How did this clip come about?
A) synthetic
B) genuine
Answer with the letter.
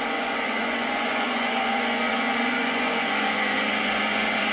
A